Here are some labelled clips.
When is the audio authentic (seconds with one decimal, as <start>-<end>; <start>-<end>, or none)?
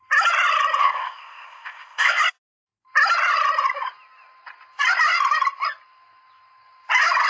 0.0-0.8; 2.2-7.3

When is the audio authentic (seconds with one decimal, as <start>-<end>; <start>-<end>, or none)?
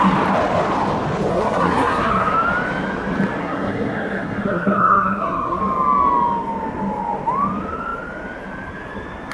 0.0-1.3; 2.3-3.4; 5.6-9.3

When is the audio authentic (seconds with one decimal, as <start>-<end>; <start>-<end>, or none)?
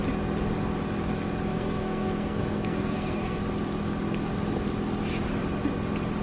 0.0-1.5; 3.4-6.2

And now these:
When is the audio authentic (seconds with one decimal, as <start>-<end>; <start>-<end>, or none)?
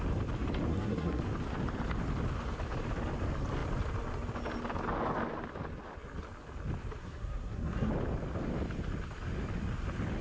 0.0-0.7; 1.2-7.0; 7.9-10.2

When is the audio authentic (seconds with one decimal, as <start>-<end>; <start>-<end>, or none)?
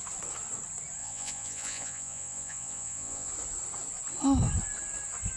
0.0-1.0; 3.3-5.4